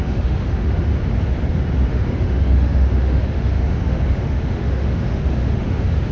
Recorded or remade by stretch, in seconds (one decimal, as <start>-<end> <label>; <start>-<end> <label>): 0.0-0.9 remade; 0.9-1.9 recorded; 1.9-6.1 remade